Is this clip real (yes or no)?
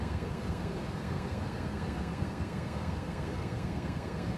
no